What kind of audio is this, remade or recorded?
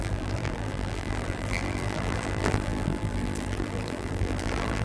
remade